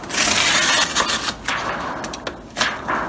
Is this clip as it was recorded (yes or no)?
yes